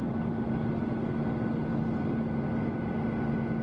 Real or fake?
real